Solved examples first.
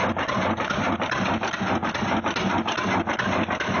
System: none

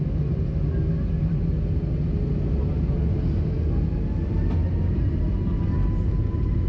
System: none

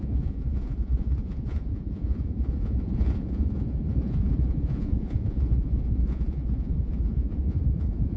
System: vocoder, Vocos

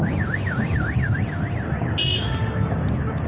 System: none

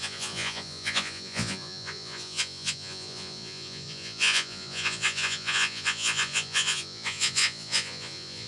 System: vocoder, Vocos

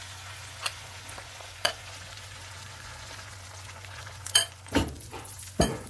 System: vocoder, Vocos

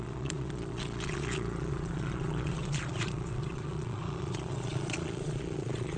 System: vocoder, Vocos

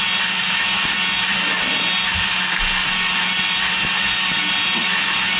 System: none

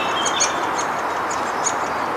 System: none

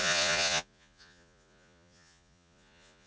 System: vocoder, Vocos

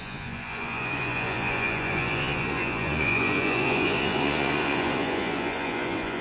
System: vocoder, Vocos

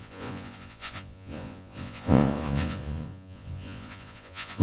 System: vocoder, Vocos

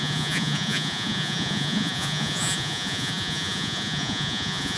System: vocoder, Vocos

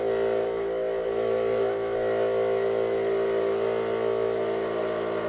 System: none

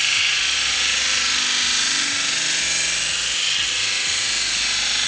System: none